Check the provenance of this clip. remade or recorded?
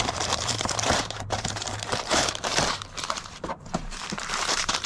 remade